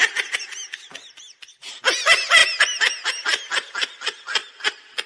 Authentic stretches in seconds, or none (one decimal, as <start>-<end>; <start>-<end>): 0.0-5.1